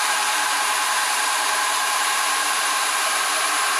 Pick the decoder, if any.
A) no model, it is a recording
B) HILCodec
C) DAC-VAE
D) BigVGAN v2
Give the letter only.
D